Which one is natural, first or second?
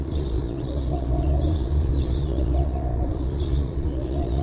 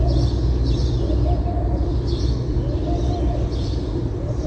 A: second